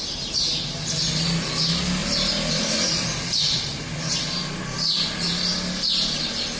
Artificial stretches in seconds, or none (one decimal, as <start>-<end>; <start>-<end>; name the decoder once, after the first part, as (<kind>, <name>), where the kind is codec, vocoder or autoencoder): 2.0-4.0 (vocoder, BigVGAN v2)